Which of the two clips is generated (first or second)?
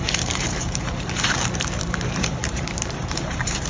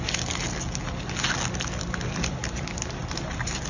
first